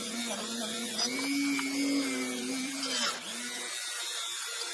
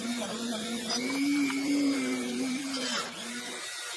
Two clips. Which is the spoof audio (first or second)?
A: second